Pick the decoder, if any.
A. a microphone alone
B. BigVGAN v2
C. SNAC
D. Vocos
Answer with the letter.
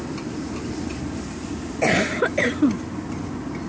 A